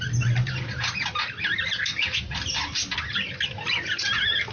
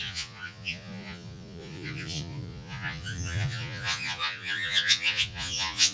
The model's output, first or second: second